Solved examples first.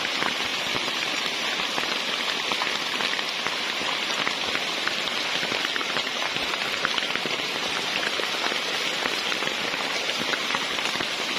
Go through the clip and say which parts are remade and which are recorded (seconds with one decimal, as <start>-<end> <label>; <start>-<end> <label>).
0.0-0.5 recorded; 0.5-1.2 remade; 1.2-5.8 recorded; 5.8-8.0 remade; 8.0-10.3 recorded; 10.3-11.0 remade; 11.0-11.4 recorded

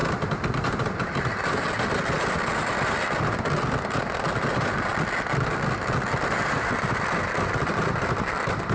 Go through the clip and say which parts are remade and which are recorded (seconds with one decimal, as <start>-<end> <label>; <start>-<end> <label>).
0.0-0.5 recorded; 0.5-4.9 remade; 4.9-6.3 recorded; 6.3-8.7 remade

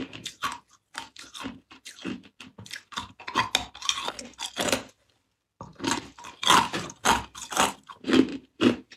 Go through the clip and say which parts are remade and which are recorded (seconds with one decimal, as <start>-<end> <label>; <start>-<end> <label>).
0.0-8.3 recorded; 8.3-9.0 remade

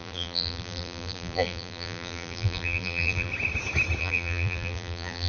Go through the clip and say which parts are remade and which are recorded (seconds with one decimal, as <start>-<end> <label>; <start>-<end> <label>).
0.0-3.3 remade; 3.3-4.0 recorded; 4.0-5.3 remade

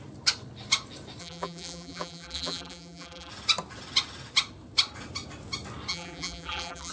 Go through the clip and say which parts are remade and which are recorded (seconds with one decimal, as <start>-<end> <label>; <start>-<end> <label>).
0.0-1.2 recorded; 1.2-3.3 remade; 3.3-5.9 recorded; 5.9-6.9 remade

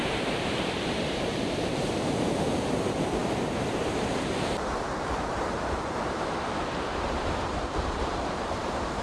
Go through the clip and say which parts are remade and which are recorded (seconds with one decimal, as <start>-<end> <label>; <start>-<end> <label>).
0.0-9.0 remade